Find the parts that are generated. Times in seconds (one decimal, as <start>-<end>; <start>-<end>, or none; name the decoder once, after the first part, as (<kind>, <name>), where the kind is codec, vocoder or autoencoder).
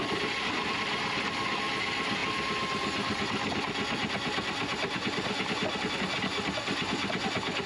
none